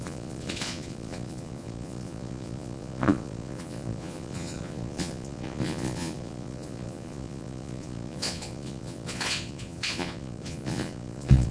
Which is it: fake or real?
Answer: fake